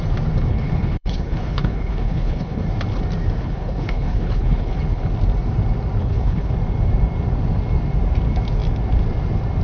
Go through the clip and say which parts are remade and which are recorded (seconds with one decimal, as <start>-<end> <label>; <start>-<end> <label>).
0.0-0.5 recorded; 0.5-2.6 remade; 2.6-3.4 recorded; 3.4-5.0 remade; 5.0-6.0 recorded; 6.0-6.5 remade; 6.5-9.6 recorded